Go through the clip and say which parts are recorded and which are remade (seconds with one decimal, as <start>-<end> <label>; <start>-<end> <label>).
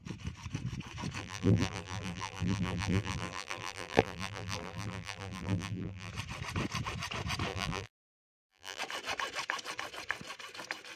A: 0.0-1.2 recorded; 1.2-6.1 remade; 6.1-7.5 recorded; 7.5-8.8 remade; 8.8-11.0 recorded